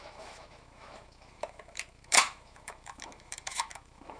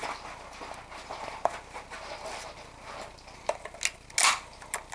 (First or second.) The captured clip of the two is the second